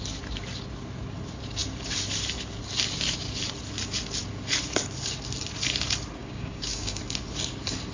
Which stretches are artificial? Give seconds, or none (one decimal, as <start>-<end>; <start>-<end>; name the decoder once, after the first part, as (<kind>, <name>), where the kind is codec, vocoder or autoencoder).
6.2-7.0 (codec, DAC)